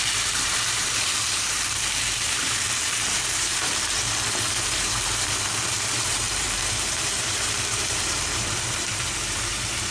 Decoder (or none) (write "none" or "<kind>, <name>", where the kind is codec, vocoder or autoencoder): vocoder, BigVGAN v2